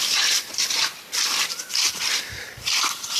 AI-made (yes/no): no